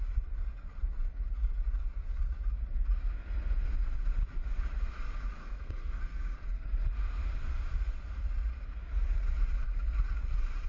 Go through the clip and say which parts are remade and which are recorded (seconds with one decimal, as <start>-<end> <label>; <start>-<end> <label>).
0.0-5.4 recorded; 5.4-6.4 remade; 6.4-10.7 recorded